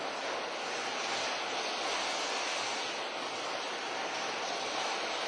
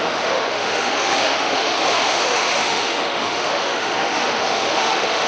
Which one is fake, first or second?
second